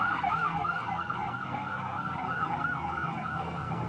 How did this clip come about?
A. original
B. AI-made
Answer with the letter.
B